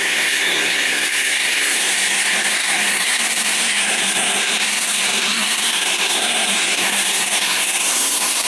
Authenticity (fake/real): fake